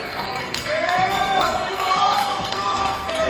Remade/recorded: remade